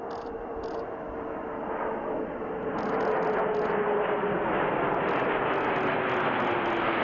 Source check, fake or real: real